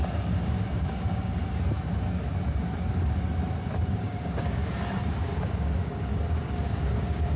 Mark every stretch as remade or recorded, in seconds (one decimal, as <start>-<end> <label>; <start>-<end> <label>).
0.0-1.4 remade; 1.4-2.8 recorded; 2.8-3.3 remade; 3.3-3.9 recorded; 3.9-4.6 remade; 4.6-5.1 recorded; 5.1-7.4 remade